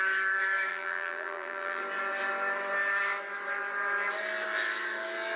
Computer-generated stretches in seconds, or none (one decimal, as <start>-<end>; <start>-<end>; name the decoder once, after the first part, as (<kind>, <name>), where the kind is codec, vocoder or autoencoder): 0.7-1.8 (vocoder, BigVGAN v2)